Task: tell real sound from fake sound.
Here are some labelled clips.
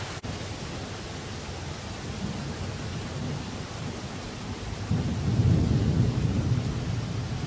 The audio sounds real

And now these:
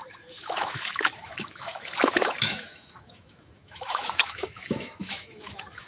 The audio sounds fake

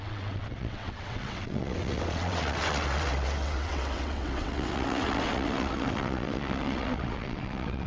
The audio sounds fake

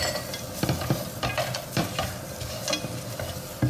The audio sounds real